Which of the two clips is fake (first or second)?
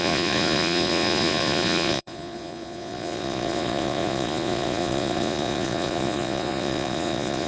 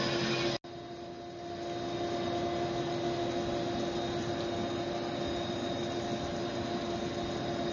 first